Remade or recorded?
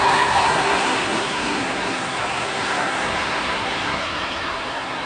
remade